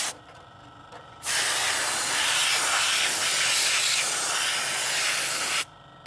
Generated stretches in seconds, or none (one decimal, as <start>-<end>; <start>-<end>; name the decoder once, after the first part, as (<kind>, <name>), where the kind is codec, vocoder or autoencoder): 0.0-2.4 (vocoder, BigVGAN v2)